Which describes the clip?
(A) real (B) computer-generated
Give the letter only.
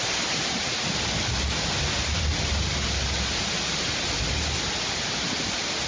A